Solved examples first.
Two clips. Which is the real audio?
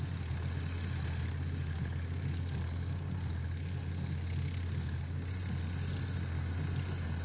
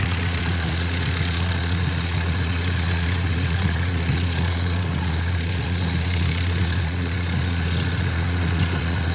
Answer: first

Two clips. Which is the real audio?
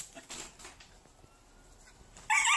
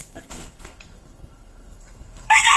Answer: first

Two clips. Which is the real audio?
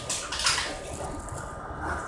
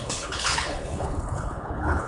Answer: first